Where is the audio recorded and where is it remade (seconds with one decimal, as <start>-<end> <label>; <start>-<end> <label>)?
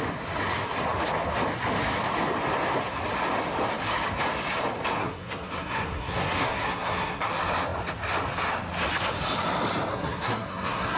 0.0-5.0 recorded; 5.0-7.3 remade; 7.3-9.9 recorded; 9.9-11.0 remade